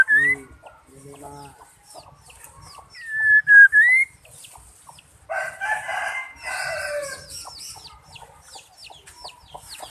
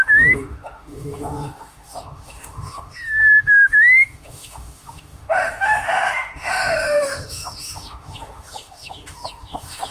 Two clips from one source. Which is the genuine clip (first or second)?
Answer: first